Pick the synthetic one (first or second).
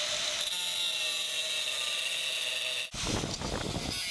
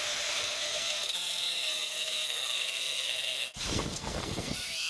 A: second